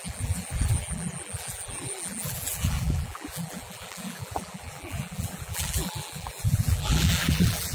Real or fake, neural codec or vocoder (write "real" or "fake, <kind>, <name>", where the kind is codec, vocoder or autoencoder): fake, vocoder, BigVGAN v2